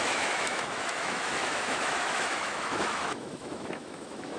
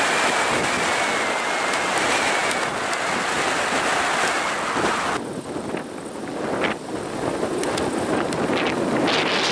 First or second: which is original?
second